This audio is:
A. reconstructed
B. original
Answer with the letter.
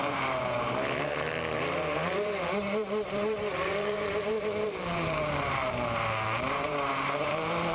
A